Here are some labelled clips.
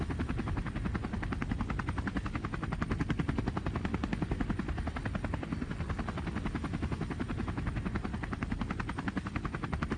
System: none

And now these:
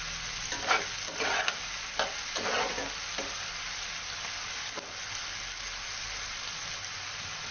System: none